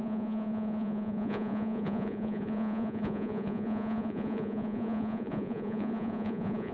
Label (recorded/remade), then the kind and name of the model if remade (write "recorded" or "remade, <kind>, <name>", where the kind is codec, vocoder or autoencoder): remade, vocoder, Vocos